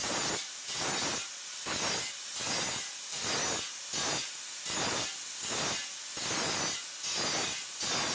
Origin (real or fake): real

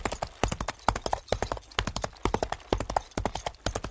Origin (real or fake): real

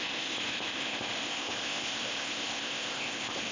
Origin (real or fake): fake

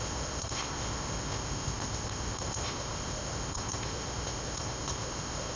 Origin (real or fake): fake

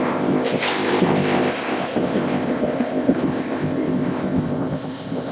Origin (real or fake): fake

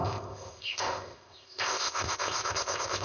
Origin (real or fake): fake